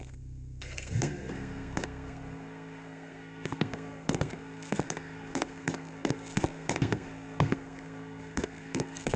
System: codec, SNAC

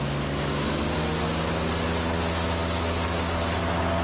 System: none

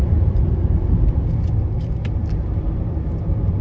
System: none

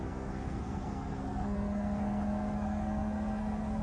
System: codec, SNAC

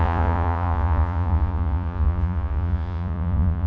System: vocoder, Vocos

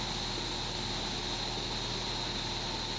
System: none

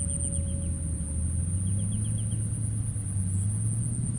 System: none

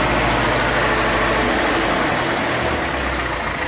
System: none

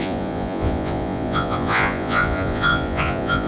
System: vocoder, Vocos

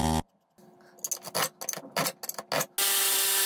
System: none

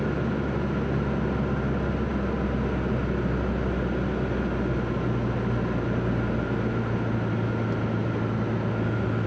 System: none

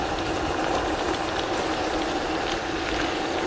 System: none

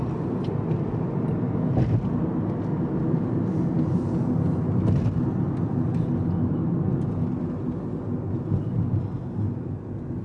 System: none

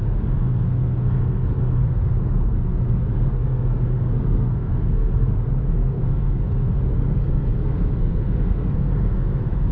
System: codec, SNAC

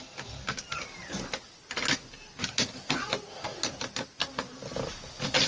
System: none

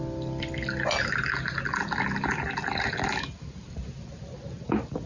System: none